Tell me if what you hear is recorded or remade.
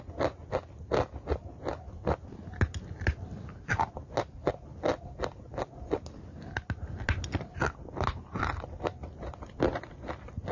recorded